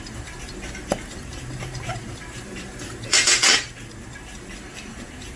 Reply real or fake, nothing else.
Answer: fake